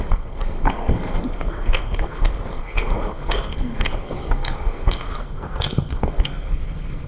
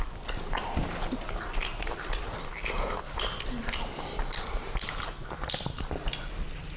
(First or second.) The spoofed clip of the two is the first